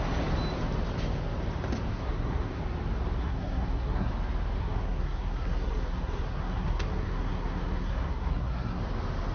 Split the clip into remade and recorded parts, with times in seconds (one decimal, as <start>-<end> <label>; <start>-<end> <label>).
0.0-1.9 recorded; 1.9-2.6 remade; 2.6-3.2 recorded; 3.2-4.1 remade; 4.1-4.6 recorded; 4.6-8.8 remade; 8.8-9.3 recorded